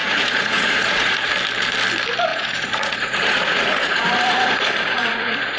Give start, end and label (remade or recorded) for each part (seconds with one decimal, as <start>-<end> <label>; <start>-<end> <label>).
0.0-1.3 remade; 1.3-2.3 recorded; 2.3-5.6 remade